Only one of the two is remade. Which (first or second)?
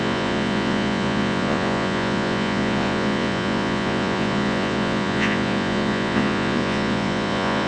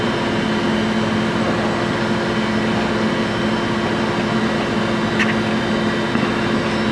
first